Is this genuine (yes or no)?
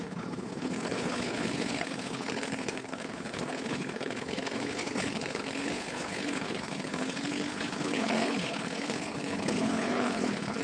no